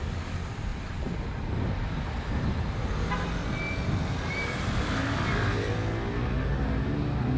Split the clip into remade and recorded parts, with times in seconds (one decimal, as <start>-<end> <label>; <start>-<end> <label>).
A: 0.0-7.4 recorded